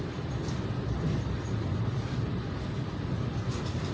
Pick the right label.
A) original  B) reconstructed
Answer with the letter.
A